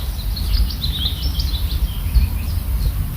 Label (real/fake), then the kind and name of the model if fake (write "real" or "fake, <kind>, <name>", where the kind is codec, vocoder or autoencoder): real